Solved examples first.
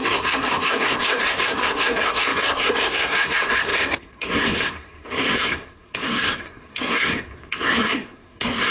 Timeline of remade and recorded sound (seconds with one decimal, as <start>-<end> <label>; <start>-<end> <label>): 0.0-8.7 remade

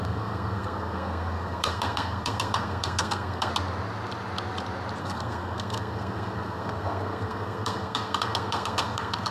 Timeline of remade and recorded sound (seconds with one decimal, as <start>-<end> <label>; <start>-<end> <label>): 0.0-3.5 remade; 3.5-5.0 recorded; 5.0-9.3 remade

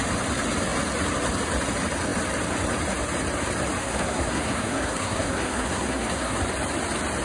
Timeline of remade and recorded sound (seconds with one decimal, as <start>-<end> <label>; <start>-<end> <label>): 0.0-3.8 recorded; 3.8-6.4 remade; 6.4-7.2 recorded